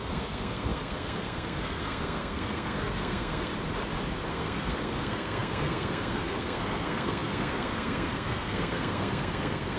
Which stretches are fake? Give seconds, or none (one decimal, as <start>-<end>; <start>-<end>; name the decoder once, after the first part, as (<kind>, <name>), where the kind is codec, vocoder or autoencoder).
0.0-3.5 (codec, SNAC); 4.3-9.8